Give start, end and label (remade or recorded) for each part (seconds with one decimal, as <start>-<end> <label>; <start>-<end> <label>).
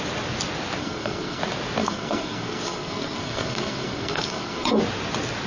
0.0-0.8 recorded; 0.8-1.4 remade; 1.4-1.8 recorded; 1.8-4.8 remade; 4.8-5.5 recorded